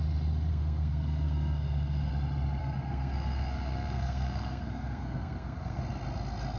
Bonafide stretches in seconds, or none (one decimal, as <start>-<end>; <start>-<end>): 0.0-0.5; 2.1-2.6; 5.8-6.6